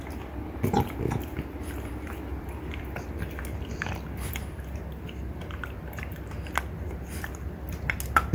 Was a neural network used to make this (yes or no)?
no